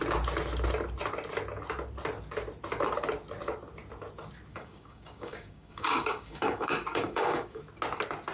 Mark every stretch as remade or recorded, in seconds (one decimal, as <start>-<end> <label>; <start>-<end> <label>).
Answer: 0.0-4.5 recorded; 4.5-7.6 remade; 7.6-8.3 recorded